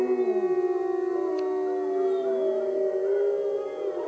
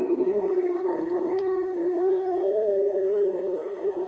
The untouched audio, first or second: first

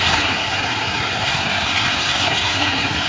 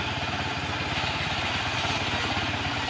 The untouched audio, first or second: second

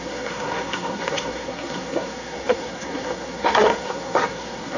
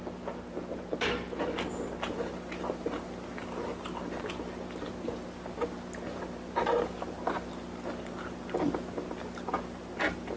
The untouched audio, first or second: second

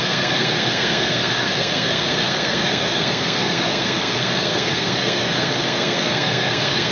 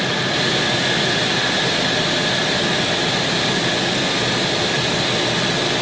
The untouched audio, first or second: second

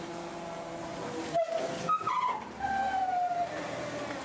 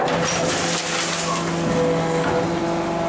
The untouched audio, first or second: second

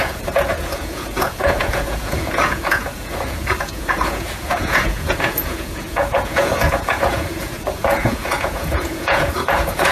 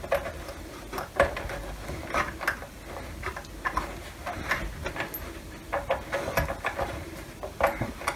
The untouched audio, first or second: second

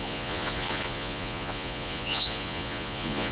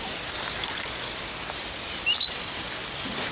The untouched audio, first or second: second